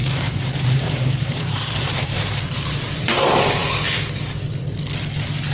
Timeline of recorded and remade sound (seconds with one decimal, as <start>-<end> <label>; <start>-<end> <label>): 0.0-3.2 remade; 3.2-5.5 recorded